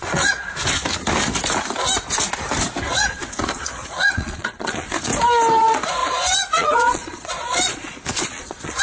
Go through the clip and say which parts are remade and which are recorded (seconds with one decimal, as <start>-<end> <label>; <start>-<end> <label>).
0.0-0.6 remade; 0.6-2.9 recorded; 2.9-5.1 remade; 5.1-5.6 recorded; 5.6-8.8 remade